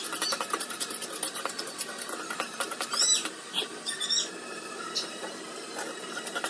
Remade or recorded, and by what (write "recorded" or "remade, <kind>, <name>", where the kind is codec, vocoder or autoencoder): remade, vocoder, BigVGAN v2